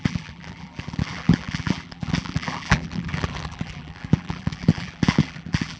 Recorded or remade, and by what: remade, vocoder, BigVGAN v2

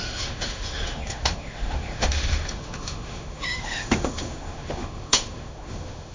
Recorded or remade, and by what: remade, autoencoder, DAC-VAE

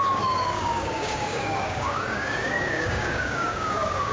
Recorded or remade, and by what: remade, codec, DAC